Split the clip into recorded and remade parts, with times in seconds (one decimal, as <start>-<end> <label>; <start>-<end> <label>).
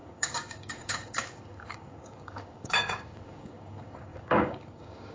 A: 0.0-5.1 remade